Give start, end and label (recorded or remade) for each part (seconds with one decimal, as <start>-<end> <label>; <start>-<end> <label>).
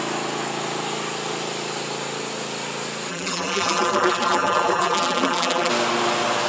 0.0-3.1 recorded; 3.1-5.7 remade; 5.7-6.5 recorded